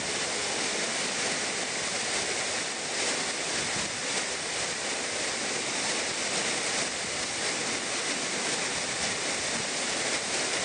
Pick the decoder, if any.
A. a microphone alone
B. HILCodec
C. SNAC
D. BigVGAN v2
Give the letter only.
A